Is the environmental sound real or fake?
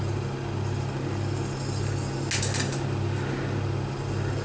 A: real